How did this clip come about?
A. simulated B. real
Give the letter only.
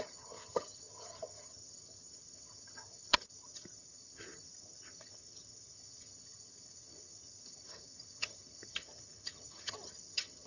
A